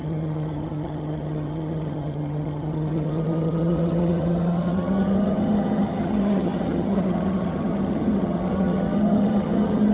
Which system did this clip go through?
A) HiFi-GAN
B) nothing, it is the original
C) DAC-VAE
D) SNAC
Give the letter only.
A